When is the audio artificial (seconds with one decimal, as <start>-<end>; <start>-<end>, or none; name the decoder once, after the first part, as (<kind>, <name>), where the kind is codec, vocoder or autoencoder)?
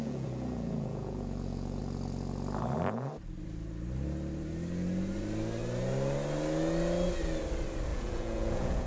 0.0-1.8 (vocoder, Vocos); 7.9-8.9